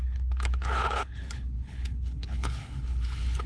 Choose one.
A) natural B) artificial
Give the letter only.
B